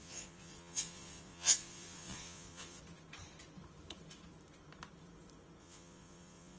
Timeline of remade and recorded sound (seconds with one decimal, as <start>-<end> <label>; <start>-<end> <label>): 0.0-2.8 remade; 2.8-5.6 recorded; 5.6-6.6 remade